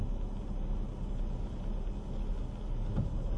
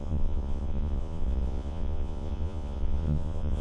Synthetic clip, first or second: second